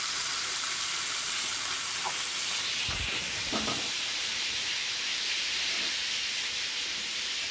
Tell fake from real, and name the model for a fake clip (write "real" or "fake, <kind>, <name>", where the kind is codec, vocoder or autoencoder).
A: fake, vocoder, BigVGAN v2